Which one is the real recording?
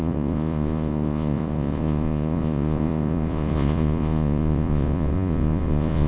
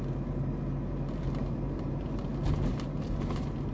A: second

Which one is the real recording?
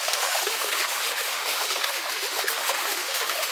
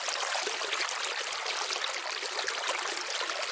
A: second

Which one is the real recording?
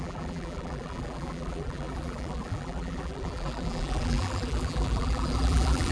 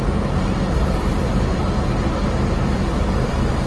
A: second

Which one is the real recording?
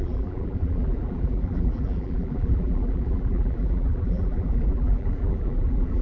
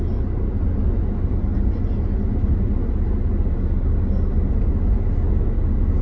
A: second